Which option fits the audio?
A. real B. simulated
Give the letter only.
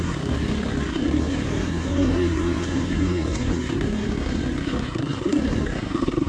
B